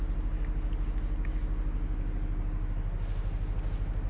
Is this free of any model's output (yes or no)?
yes